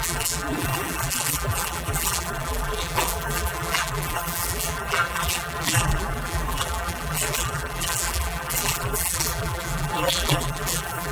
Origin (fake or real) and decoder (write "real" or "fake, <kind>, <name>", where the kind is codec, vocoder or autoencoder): fake, vocoder, BigVGAN v2